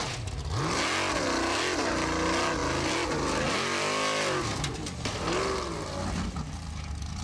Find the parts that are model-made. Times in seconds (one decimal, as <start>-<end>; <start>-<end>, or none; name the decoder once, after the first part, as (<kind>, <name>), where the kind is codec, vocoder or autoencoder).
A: none